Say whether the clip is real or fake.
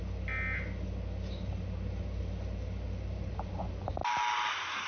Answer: real